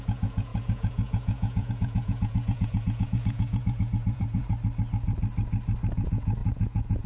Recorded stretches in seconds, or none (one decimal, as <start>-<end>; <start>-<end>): 4.4-5.9